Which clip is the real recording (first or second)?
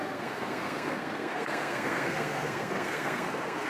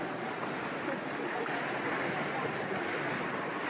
second